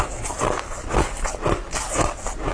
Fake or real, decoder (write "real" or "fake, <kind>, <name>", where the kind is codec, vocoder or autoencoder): real